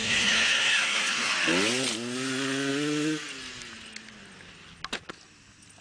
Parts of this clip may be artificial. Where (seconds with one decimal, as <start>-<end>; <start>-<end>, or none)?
0.0-1.3